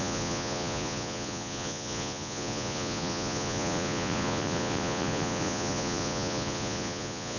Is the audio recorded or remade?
remade